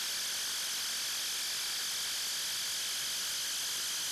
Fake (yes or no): no